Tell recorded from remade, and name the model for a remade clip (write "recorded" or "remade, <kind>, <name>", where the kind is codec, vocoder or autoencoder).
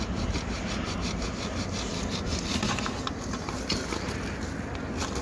recorded